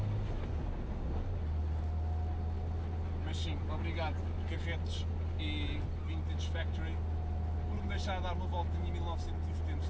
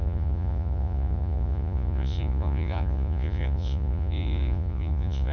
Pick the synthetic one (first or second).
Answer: second